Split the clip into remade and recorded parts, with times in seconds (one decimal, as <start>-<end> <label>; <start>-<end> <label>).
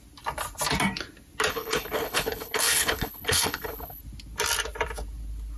0.0-1.5 recorded; 1.5-4.0 remade; 4.0-5.6 recorded